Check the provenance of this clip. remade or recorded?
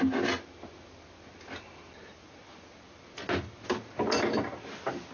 recorded